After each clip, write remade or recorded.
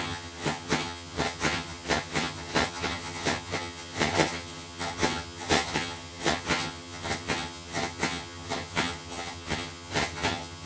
remade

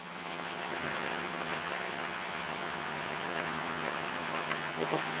remade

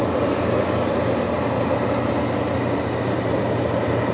recorded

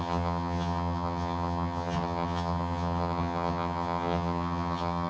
remade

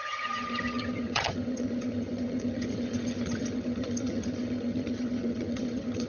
remade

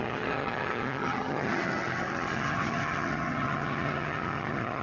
remade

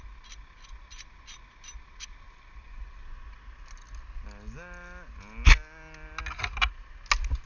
recorded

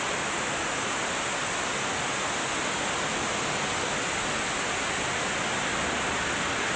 recorded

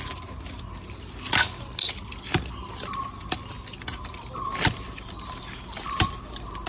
recorded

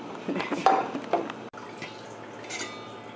recorded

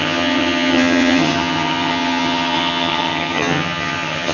remade